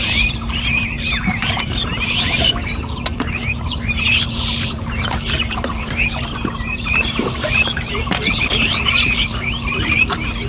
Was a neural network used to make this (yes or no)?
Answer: yes